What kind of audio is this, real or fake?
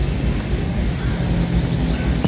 real